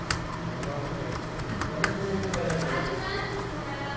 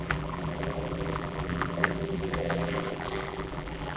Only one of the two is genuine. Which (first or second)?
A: first